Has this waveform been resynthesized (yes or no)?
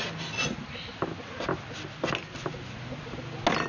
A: no